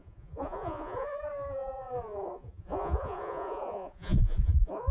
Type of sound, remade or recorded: remade